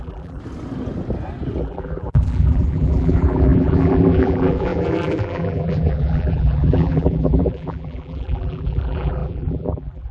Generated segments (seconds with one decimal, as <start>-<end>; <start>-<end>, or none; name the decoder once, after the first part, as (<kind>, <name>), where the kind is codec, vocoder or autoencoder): 0.0-0.4 (vocoder, BigVGAN v2); 1.6-10.1